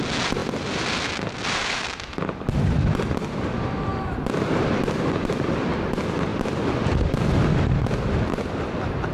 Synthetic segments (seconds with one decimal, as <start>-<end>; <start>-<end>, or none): none